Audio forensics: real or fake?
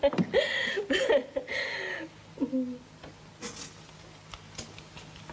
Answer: real